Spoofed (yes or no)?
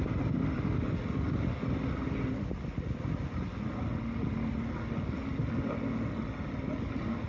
no